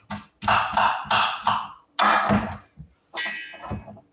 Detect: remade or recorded recorded